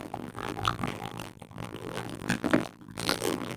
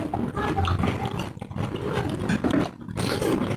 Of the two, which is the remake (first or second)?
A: first